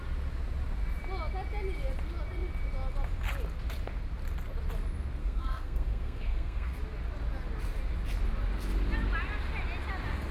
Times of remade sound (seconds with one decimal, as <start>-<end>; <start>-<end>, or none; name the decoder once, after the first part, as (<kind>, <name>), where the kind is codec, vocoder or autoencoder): 5.2-6.7 (codec, SNAC)